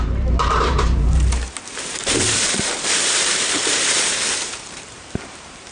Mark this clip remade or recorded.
remade